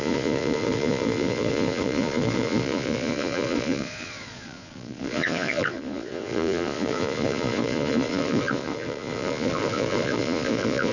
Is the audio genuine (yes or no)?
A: no